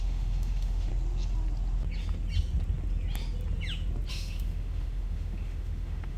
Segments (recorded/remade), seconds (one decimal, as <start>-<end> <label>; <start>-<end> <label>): 0.0-0.9 remade; 0.9-4.1 recorded; 4.1-6.2 remade